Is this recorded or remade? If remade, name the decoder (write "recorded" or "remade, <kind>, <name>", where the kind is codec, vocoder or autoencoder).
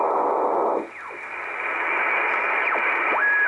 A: remade, vocoder, BigVGAN v2